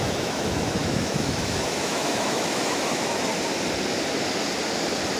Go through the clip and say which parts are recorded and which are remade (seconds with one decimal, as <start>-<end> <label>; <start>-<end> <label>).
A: 0.0-3.3 remade; 3.3-5.2 recorded